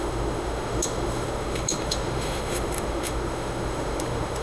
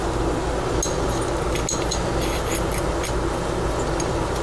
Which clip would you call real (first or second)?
second